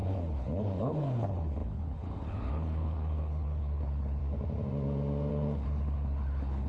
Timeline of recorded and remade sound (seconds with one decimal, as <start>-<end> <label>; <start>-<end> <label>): 0.0-4.2 remade; 4.2-5.3 recorded; 5.3-6.7 remade